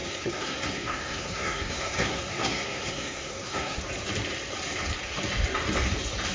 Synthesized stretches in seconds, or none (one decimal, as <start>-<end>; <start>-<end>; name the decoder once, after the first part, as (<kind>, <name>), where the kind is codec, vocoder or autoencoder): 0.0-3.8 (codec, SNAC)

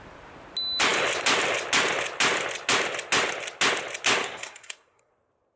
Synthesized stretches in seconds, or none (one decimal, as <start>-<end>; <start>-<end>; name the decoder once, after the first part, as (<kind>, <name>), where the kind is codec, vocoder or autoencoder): 4.2-5.1 (codec, SNAC)

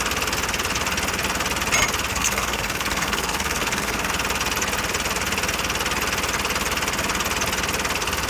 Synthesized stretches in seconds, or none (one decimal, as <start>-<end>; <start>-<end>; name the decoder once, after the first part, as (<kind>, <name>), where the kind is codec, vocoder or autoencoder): 2.1-4.1 (codec, SNAC)